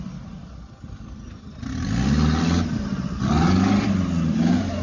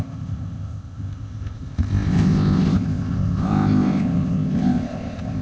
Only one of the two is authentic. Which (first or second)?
first